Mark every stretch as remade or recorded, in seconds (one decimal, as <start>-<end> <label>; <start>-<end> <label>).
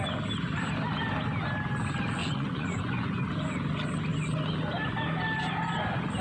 0.0-2.2 recorded; 2.2-3.3 remade; 3.3-6.2 recorded